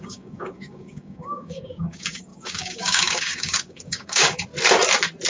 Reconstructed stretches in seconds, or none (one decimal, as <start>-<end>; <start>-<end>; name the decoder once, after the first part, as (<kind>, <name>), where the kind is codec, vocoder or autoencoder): 0.0-4.5 (codec, DAC)